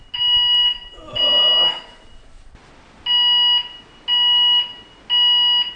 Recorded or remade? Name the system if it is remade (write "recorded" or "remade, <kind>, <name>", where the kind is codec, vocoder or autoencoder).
recorded